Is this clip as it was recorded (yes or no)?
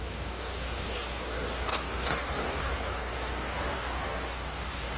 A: no